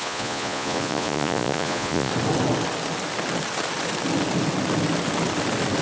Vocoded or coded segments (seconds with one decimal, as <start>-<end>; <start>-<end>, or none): 0.0-2.1